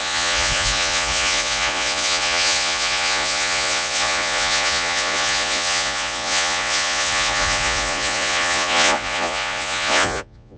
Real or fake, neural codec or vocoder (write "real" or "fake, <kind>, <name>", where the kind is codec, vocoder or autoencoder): fake, vocoder, Vocos